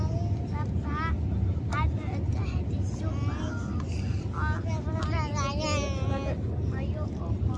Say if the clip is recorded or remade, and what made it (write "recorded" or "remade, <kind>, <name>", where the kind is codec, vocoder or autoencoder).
recorded